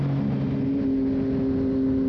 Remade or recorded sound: recorded